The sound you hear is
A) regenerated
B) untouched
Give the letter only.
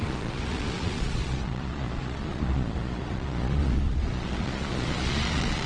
A